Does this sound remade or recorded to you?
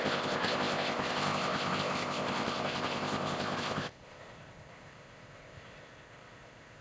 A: remade